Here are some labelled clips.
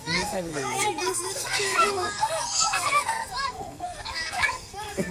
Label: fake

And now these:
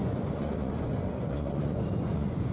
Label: fake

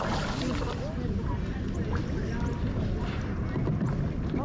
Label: real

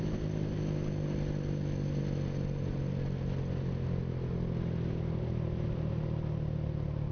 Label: real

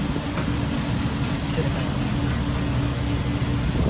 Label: real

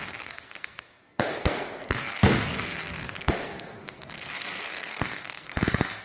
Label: fake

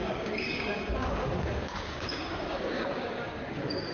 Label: fake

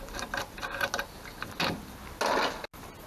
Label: real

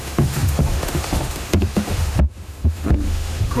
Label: fake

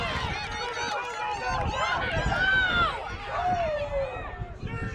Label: real